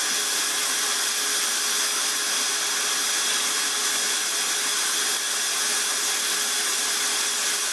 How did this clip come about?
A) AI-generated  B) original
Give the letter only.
B